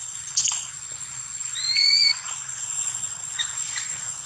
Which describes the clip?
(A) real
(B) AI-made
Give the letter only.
B